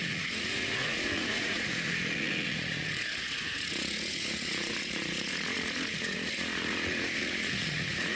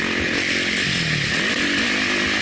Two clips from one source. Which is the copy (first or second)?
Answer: first